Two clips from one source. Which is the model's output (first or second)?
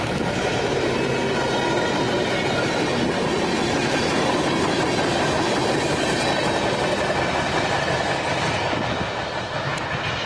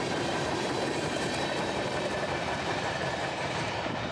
second